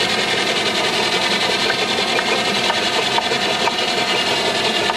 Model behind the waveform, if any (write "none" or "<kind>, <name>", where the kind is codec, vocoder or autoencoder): vocoder, BigVGAN v2